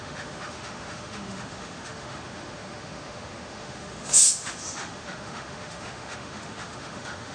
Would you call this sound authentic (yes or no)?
no